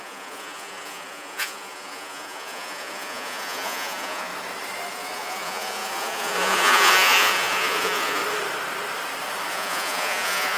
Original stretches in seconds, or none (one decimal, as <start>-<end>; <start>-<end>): 4.3-4.9; 8.2-9.5

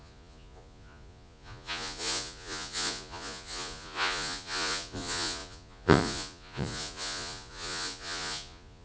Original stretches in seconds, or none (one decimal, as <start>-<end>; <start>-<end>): none

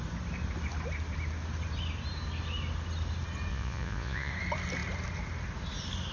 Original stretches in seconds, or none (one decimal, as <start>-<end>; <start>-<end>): 0.0-3.5; 4.3-6.1

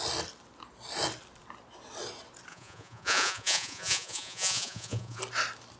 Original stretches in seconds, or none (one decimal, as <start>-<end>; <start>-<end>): 0.0-2.5; 5.2-5.8

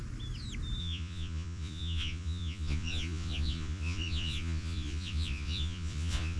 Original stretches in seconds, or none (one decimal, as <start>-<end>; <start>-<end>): 0.0-0.8

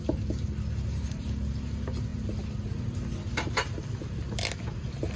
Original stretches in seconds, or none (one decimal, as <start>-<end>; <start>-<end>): 0.0-5.2

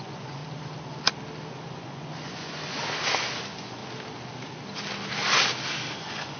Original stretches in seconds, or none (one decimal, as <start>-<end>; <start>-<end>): 0.4-1.5; 2.8-3.4; 3.8-6.0